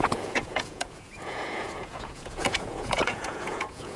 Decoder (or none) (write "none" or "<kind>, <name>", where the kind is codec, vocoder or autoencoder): vocoder, Vocos